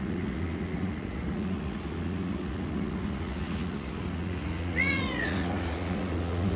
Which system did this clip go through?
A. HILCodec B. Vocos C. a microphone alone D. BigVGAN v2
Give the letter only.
B